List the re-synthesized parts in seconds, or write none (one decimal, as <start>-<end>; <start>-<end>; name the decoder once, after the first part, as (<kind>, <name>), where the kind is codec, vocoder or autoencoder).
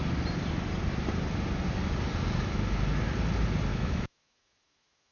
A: 3.7-5.1 (autoencoder, DAC-VAE)